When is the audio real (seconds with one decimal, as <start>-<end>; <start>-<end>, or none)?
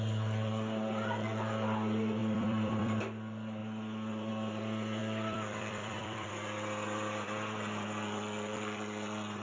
0.0-2.2; 3.0-5.0; 6.3-9.4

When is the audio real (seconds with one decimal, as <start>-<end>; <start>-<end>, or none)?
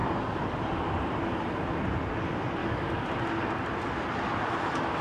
0.6-2.6; 3.1-5.0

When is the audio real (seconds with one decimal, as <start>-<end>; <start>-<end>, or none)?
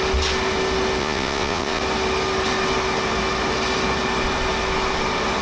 0.0-1.0; 1.8-5.4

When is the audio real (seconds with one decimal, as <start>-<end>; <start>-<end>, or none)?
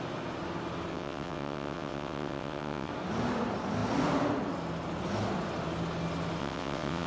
0.0-0.9; 2.9-6.4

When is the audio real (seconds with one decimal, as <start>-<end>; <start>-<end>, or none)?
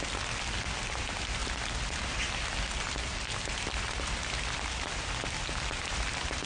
0.0-6.5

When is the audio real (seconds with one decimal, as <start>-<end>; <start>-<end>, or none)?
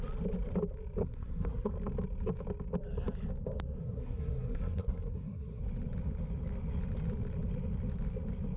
0.0-1.0; 1.7-3.8; 5.6-8.6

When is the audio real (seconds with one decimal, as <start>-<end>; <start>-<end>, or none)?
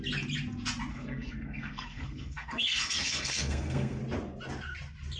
0.0-0.9; 4.0-5.2